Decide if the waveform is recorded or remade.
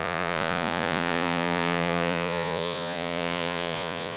remade